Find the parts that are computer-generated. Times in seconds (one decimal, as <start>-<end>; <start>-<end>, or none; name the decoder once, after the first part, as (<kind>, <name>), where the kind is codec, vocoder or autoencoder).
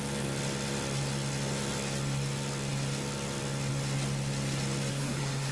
4.9-5.5 (codec, SNAC)